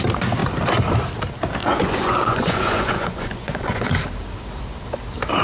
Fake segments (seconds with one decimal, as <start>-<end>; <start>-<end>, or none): 1.6-3.9